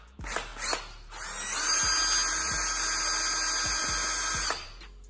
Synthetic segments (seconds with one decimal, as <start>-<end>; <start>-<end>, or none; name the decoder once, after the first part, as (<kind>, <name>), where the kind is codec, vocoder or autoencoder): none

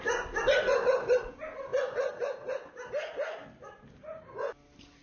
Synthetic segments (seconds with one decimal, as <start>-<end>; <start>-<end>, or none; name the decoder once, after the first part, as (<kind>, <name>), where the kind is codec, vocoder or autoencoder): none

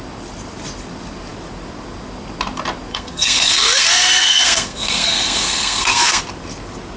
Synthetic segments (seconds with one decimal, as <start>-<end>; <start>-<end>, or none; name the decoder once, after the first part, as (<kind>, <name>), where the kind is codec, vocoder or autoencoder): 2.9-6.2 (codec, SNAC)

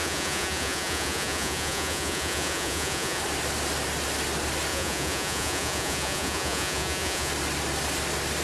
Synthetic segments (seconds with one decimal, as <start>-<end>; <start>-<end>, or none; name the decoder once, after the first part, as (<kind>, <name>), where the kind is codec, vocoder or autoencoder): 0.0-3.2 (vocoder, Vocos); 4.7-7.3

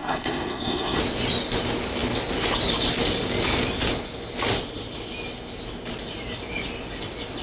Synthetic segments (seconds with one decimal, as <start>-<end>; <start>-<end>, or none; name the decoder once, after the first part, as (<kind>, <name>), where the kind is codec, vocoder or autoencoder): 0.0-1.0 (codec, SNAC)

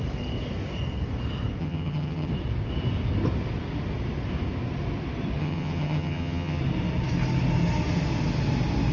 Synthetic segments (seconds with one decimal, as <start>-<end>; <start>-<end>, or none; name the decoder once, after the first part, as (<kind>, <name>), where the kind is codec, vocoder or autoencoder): 1.6-2.3 (vocoder, HiFi-GAN); 5.4-6.6

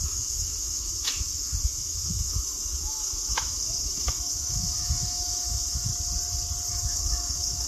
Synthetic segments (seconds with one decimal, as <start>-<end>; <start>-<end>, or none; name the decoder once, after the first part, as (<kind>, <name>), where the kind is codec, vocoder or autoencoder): 0.0-5.9 (autoencoder, DAC-VAE); 6.7-7.7

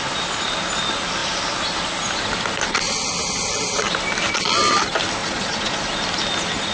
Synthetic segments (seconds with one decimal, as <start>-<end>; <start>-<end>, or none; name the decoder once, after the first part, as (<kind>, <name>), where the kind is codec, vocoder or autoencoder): 5.2-5.8 (vocoder, Vocos)